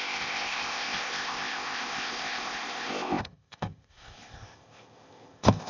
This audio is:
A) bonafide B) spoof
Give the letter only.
B